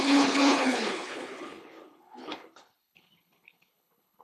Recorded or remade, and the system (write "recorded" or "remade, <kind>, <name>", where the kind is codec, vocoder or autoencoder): remade, codec, HILCodec